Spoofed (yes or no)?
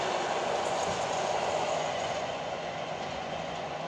yes